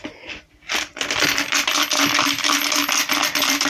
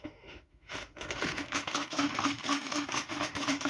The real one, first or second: first